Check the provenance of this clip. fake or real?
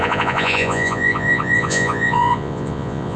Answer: fake